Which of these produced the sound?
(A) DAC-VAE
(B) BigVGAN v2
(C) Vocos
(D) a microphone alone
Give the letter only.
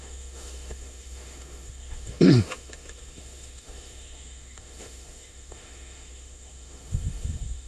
A